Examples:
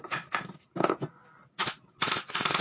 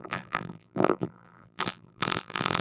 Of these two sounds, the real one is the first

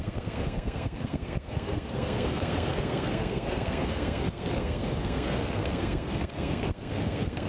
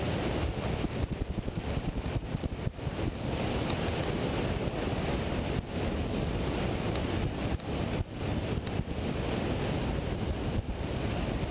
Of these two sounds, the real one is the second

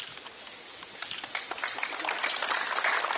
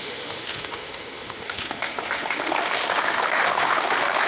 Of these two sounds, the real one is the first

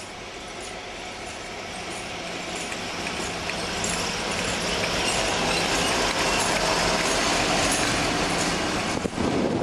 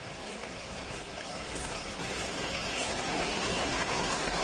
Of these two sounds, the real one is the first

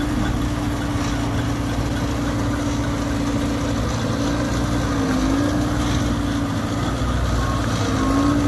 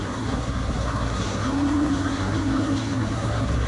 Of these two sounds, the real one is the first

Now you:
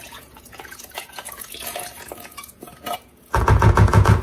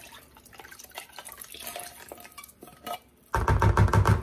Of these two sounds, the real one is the second